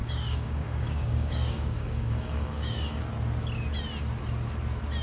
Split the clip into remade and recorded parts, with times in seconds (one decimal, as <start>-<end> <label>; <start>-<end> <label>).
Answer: 0.0-3.0 remade; 3.0-5.0 recorded